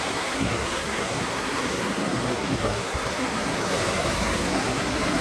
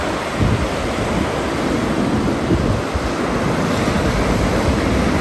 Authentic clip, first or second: second